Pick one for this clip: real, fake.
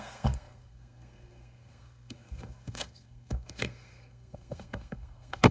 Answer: fake